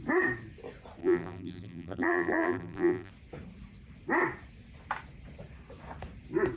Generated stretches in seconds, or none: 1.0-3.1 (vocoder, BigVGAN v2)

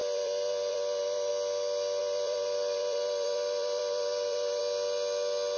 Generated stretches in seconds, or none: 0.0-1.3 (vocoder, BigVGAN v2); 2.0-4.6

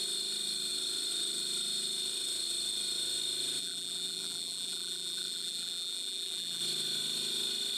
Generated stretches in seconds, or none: 3.6-6.6 (vocoder, BigVGAN v2)

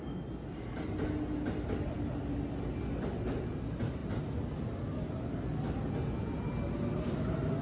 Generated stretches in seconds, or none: none

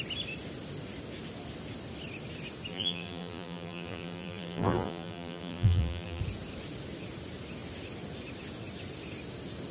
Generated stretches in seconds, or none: 2.7-6.2 (vocoder, BigVGAN v2)

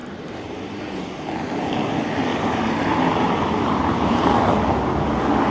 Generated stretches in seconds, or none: 0.0-0.5 (vocoder, BigVGAN v2); 2.3-4.4

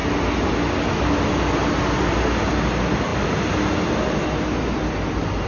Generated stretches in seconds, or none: none

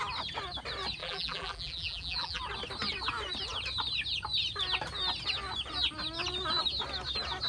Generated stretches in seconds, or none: 1.0-2.4 (vocoder, BigVGAN v2)